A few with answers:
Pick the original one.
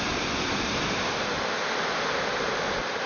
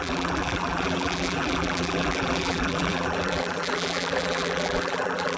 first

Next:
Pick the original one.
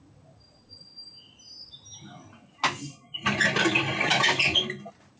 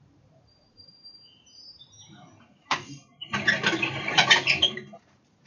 first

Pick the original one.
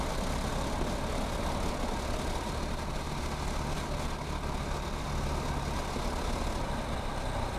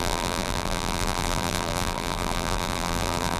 first